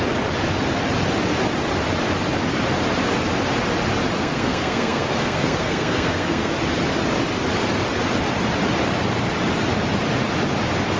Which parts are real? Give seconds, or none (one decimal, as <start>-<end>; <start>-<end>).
0.0-4.2; 6.5-11.0